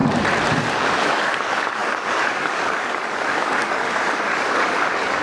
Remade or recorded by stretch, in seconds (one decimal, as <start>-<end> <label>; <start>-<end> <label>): 0.0-0.5 recorded; 0.5-5.2 remade